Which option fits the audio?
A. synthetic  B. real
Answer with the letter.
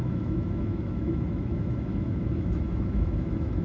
A